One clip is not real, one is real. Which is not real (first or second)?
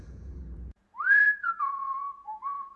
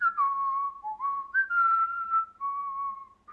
first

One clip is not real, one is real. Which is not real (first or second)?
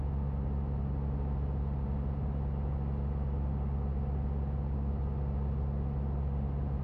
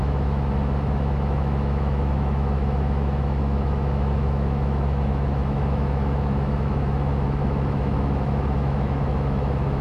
second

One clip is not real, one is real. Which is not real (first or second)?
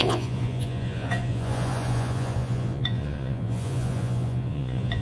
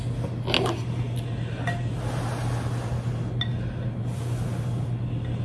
first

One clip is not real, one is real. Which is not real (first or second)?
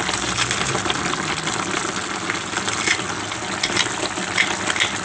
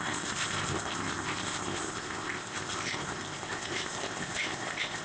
second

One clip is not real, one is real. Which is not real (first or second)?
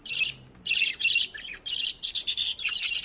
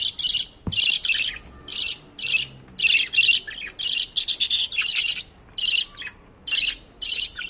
first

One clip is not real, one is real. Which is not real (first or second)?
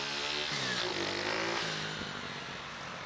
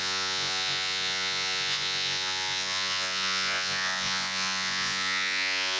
second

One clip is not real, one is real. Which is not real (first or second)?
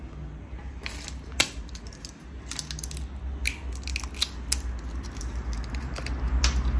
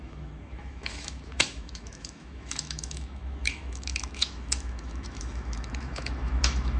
second